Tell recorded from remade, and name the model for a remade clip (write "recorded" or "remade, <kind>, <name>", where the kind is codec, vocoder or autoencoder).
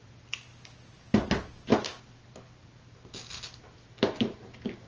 recorded